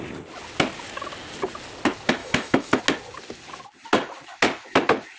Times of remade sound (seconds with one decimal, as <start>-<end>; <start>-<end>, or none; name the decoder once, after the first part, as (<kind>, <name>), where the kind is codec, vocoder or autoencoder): 2.2-2.8 (autoencoder, DAC-VAE)